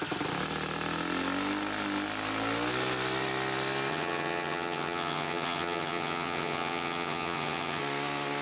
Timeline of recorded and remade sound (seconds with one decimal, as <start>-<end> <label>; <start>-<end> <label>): 0.0-3.9 recorded; 3.9-7.8 remade; 7.8-8.4 recorded